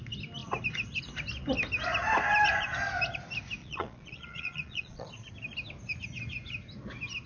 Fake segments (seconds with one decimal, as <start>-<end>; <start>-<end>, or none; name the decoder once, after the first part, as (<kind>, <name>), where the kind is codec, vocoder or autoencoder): 3.6-5.3 (vocoder, Vocos)